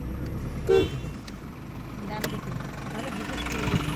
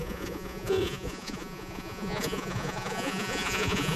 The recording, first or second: first